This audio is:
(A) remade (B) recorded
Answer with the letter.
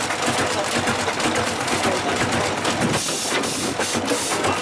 B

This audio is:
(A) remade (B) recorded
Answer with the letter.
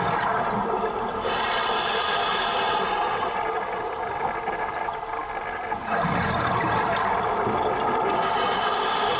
B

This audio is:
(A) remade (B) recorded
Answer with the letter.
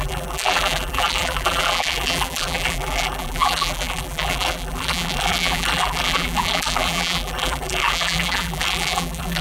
A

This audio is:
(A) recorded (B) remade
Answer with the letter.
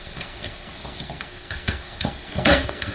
B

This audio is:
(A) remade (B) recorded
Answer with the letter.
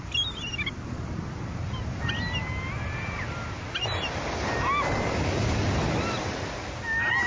B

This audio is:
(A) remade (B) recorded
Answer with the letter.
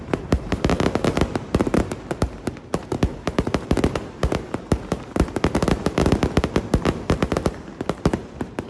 A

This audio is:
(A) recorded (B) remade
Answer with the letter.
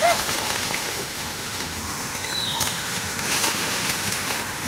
B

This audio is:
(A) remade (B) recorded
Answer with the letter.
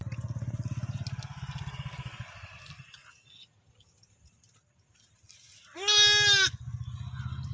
B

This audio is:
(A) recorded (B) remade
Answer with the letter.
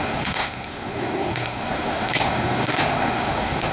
B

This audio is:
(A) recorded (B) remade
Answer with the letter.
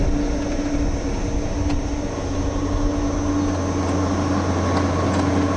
A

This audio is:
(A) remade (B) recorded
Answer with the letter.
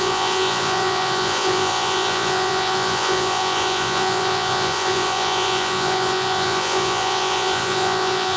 A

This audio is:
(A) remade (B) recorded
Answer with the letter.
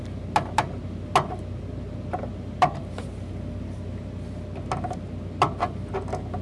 B